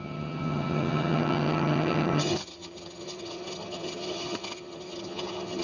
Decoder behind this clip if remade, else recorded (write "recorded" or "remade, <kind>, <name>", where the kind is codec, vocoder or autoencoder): remade, vocoder, HiFi-GAN